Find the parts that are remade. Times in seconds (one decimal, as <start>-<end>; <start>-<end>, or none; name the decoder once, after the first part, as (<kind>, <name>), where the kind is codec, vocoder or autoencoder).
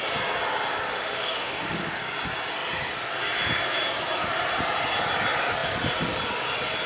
0.9-2.0 (autoencoder, DAC-VAE)